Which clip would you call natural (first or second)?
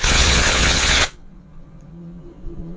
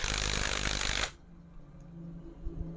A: second